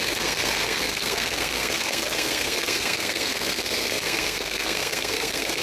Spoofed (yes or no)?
yes